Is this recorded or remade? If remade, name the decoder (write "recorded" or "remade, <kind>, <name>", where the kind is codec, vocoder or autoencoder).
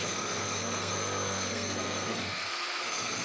remade, codec, SNAC